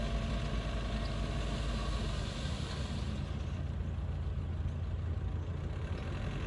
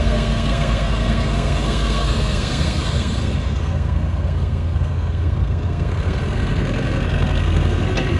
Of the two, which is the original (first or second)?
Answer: first